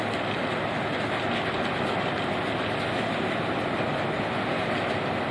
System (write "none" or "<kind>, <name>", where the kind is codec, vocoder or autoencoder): none